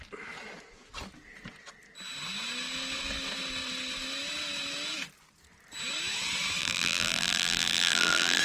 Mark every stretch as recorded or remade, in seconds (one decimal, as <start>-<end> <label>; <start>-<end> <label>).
0.0-6.6 recorded; 6.6-8.4 remade